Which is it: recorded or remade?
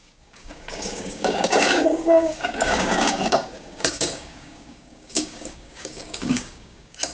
remade